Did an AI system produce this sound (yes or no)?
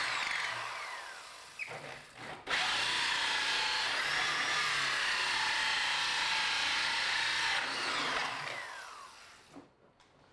no